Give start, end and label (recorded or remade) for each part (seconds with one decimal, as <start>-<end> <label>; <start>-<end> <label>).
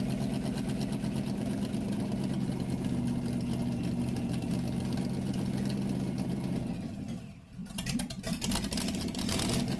0.0-9.8 recorded